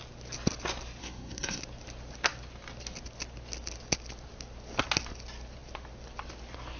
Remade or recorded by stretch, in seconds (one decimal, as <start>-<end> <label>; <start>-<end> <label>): 0.0-1.0 recorded; 1.0-1.6 remade; 1.6-6.8 recorded